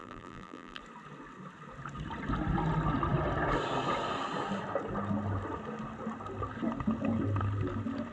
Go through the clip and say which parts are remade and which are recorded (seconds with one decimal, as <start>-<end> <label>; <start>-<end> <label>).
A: 0.0-0.8 remade; 0.8-8.1 recorded